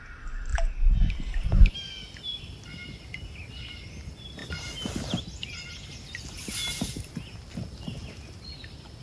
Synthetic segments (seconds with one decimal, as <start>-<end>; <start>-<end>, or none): none